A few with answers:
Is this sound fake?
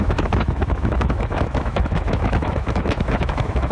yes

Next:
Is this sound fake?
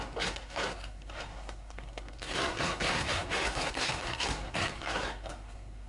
yes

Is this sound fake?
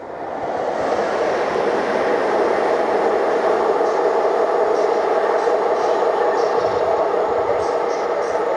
no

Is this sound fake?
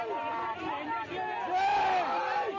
no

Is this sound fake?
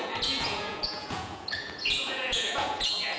yes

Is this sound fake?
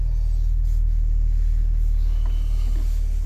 no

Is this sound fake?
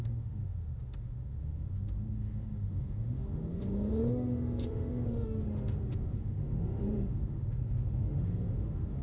yes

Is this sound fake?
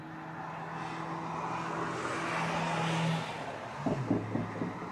no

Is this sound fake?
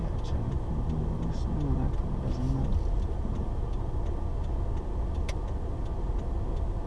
no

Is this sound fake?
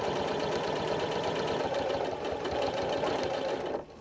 yes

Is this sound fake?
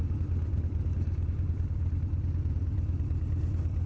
no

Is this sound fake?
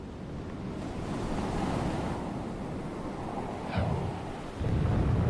no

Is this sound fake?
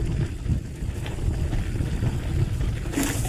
no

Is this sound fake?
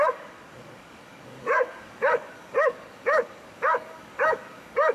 yes